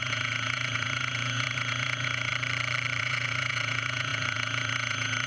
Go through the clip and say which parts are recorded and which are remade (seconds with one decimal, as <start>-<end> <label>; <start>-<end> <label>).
0.0-2.3 remade; 2.3-3.0 recorded; 3.0-5.3 remade